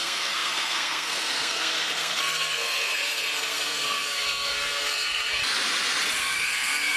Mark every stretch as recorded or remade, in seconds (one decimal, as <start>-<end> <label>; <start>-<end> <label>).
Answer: 0.0-5.4 remade; 5.4-6.2 recorded; 6.2-7.0 remade

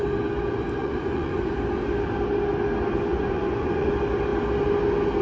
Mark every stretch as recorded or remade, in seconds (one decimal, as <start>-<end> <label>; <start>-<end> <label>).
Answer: 0.0-0.8 recorded; 0.8-1.5 remade; 1.5-3.1 recorded; 3.1-3.9 remade; 3.9-5.2 recorded